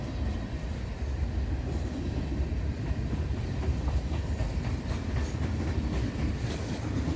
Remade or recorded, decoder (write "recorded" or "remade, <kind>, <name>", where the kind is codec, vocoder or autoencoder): recorded